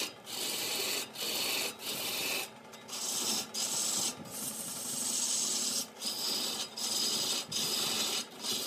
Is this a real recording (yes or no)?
yes